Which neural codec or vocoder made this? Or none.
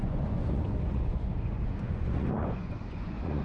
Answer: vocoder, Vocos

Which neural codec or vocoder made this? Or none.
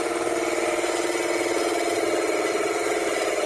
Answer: none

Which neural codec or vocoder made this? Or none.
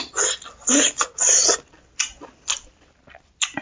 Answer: none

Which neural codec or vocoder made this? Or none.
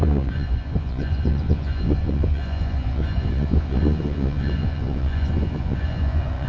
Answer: vocoder, Vocos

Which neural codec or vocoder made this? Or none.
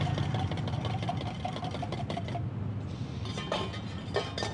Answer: none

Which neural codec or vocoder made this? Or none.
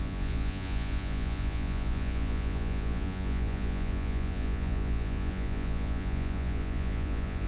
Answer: vocoder, Vocos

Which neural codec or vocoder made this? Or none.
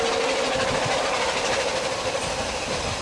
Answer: none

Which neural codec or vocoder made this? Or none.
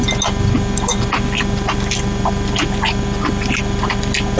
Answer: none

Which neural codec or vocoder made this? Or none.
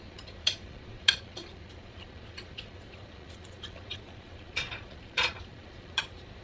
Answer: vocoder, Vocos